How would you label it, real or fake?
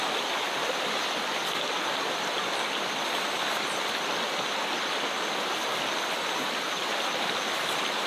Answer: real